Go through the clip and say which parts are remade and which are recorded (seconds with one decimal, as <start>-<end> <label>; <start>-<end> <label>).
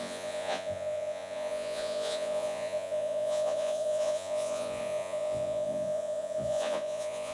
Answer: 0.0-7.3 remade